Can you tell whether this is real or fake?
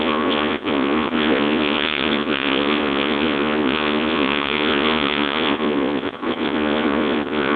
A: fake